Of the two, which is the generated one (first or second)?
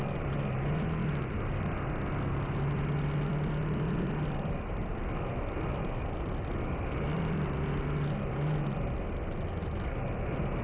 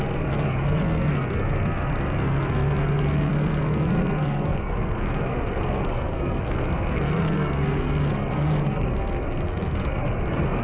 second